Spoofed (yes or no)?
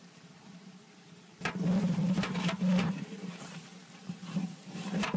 yes